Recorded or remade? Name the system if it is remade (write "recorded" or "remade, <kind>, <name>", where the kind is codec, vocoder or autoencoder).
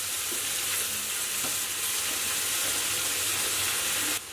recorded